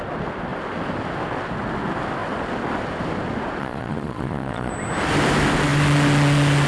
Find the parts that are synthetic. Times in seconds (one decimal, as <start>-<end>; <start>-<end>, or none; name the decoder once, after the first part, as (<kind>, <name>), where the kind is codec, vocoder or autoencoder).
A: 3.6-4.7 (vocoder, Vocos)